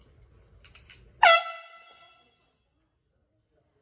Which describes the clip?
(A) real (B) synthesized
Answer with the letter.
A